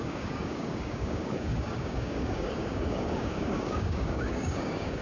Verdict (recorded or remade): remade